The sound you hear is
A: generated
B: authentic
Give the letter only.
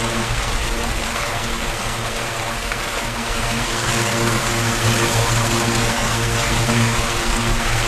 A